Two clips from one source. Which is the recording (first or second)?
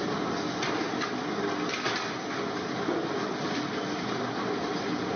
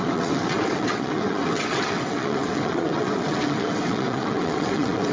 first